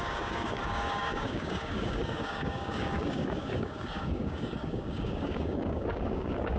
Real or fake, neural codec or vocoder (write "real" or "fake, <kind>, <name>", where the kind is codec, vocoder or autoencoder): fake, codec, DAC